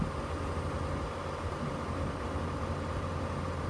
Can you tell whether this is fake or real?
real